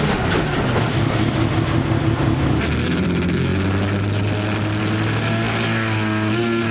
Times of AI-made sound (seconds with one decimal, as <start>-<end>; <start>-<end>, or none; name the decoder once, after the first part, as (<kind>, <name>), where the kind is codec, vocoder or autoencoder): none